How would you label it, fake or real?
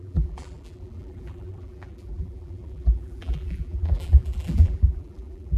fake